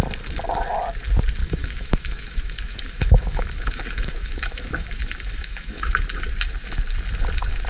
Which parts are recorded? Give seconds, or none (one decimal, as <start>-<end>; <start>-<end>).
0.0-1.4; 6.0-7.7